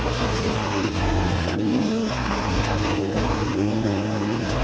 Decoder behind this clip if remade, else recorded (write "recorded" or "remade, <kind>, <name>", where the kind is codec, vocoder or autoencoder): remade, codec, SNAC